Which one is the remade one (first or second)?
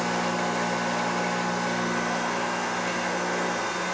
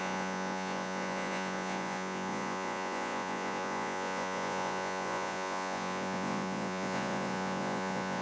second